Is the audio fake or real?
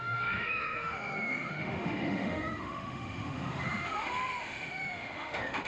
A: fake